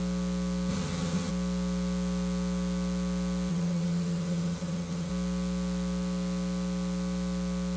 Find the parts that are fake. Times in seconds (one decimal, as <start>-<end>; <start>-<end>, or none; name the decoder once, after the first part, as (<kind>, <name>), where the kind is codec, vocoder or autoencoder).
0.7-1.3 (vocoder, HiFi-GAN); 3.5-5.1